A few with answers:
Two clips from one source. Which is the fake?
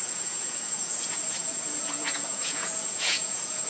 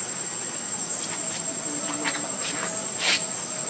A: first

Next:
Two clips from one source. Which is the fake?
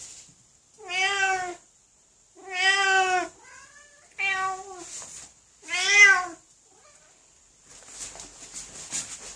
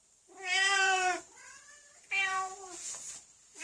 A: second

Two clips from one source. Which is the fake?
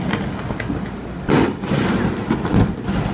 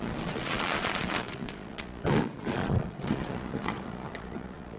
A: second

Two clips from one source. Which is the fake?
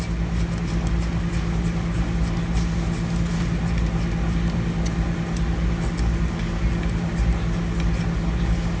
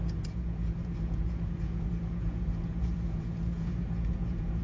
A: second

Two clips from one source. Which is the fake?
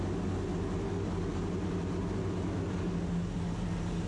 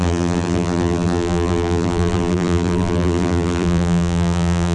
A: second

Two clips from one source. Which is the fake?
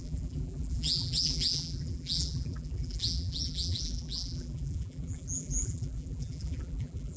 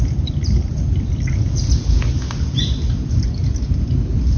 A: first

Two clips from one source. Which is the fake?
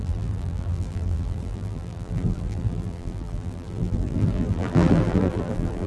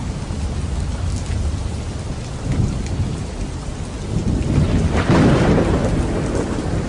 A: first